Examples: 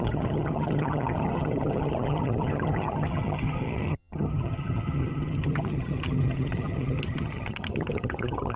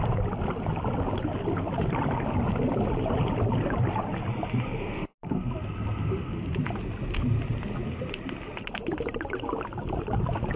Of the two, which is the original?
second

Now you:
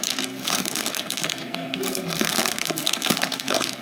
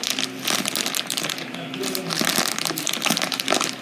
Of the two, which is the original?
second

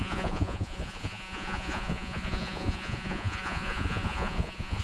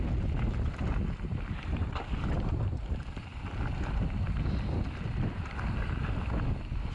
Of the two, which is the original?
second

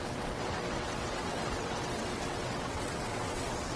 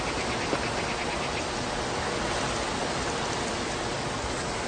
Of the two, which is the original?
second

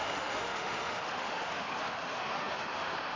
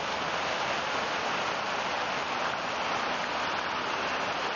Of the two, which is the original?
second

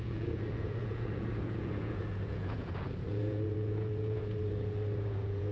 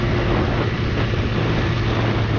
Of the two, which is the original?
second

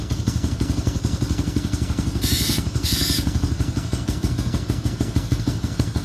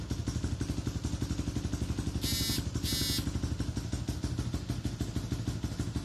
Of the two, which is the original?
second